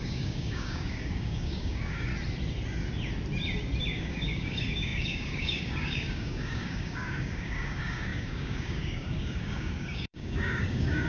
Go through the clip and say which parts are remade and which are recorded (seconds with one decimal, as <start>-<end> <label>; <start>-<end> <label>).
0.0-2.1 remade; 2.1-3.8 recorded; 3.8-11.1 remade